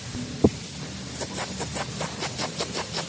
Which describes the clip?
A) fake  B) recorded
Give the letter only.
B